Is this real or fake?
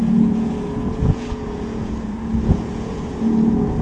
fake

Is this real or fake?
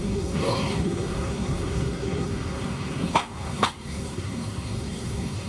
fake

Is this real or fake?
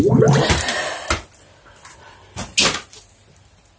real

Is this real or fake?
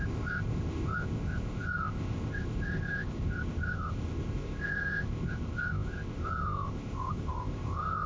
fake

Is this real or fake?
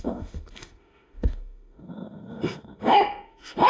fake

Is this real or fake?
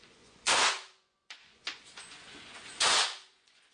fake